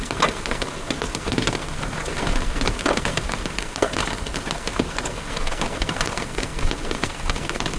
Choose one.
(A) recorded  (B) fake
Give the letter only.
B